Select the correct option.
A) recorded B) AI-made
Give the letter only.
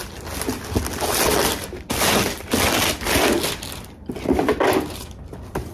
A